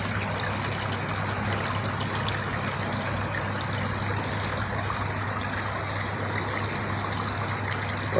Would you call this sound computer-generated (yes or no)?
no